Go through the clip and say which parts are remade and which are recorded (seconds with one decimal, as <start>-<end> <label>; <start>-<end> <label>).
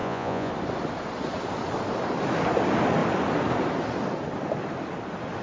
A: 0.0-0.5 remade; 0.5-5.4 recorded